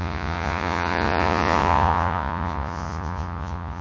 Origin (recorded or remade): remade